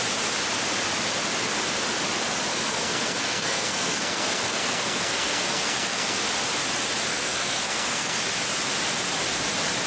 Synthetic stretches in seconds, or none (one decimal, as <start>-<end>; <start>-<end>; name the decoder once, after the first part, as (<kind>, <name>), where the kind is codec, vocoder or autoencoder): 2.5-6.2 (codec, SNAC); 7.1-8.2